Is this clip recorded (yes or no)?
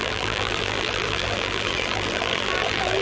no